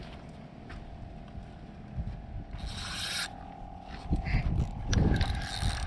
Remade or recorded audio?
recorded